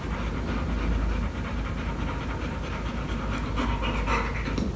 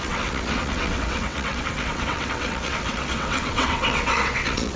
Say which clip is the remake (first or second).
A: second